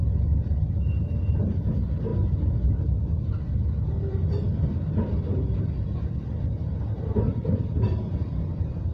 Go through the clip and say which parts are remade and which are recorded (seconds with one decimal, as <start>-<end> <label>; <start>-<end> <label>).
0.0-6.6 recorded; 6.6-8.5 remade; 8.5-8.9 recorded